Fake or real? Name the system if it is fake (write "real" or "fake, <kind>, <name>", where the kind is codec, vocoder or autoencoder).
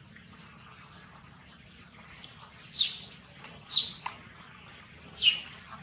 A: fake, vocoder, BigVGAN v2